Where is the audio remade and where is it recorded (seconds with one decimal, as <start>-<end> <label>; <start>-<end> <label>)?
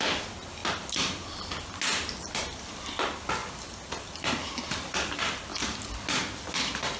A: 0.0-7.0 recorded